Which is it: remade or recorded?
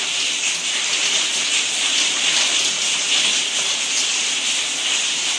recorded